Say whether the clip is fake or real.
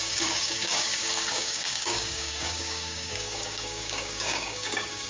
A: fake